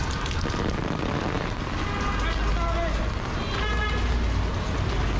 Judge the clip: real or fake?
real